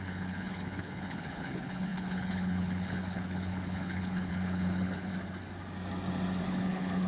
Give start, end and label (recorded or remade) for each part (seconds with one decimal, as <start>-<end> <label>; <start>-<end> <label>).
0.0-5.1 remade; 5.1-6.4 recorded; 6.4-7.1 remade